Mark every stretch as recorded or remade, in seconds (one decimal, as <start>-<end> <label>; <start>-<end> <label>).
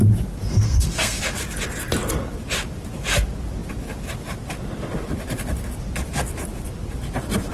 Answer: 0.0-0.5 recorded; 0.5-1.2 remade; 1.2-7.5 recorded